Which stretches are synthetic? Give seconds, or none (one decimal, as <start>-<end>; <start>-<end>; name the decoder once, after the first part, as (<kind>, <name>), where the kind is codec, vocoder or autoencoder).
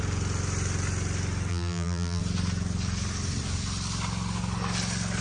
1.5-2.2 (vocoder, BigVGAN v2)